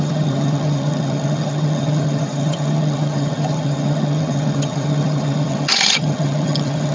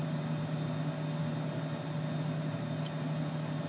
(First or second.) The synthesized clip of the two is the first